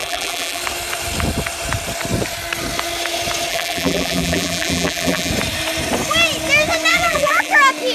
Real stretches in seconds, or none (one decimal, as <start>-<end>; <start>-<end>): 0.6-3.5; 5.3-6.9; 7.5-7.9